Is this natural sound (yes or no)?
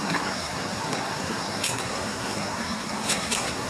no